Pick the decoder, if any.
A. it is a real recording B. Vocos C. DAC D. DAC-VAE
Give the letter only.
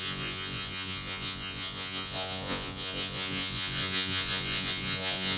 B